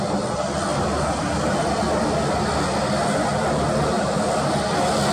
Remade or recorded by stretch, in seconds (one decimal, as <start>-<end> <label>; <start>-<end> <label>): 0.0-5.1 recorded